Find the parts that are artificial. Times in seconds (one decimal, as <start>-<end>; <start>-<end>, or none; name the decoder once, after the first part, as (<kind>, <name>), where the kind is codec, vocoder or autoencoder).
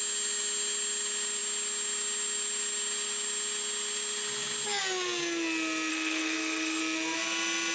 5.9-6.8 (codec, SNAC)